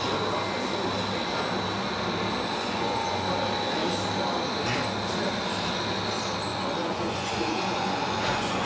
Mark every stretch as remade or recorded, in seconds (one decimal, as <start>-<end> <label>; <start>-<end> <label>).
0.0-2.6 recorded; 2.6-3.3 remade; 3.3-6.5 recorded; 6.5-8.7 remade